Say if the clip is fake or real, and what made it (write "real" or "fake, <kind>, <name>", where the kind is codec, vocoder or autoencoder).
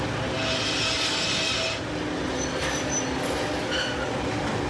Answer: real